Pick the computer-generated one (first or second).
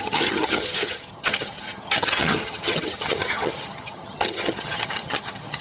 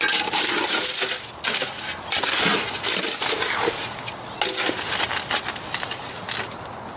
first